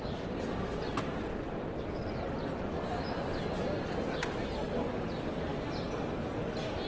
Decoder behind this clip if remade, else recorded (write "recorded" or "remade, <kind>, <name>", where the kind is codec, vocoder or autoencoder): recorded